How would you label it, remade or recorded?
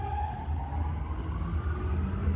recorded